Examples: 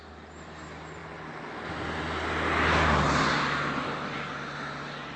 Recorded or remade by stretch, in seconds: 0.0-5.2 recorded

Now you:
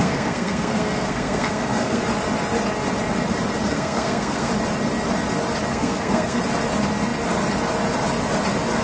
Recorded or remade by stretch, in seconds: 0.0-2.0 remade; 2.0-3.7 recorded; 3.7-4.5 remade; 4.5-5.7 recorded; 5.7-6.4 remade; 6.4-8.8 recorded

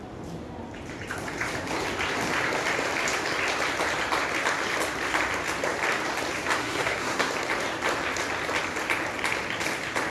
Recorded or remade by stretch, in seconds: 0.0-6.6 recorded; 6.6-7.3 remade; 7.3-10.1 recorded

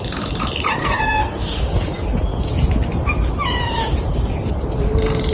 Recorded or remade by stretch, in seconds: 0.0-0.8 recorded; 0.8-1.6 remade; 1.6-5.3 recorded

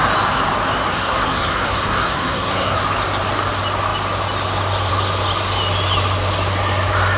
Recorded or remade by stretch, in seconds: 0.0-0.9 recorded; 0.9-2.8 remade; 2.8-7.2 recorded

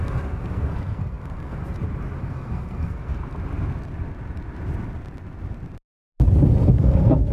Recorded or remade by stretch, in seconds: 0.0-1.6 remade; 1.6-2.2 recorded; 2.2-3.2 remade; 3.2-6.7 recorded; 6.7-7.3 remade

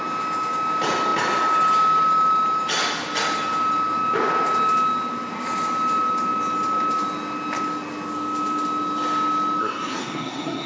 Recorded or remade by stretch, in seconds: 0.0-9.6 recorded; 9.6-10.7 remade

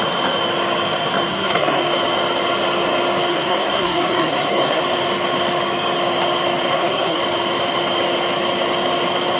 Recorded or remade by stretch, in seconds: 0.0-1.3 recorded; 1.3-1.8 remade; 1.8-3.3 recorded; 3.3-4.8 remade; 4.8-6.7 recorded; 6.7-7.2 remade; 7.2-9.4 recorded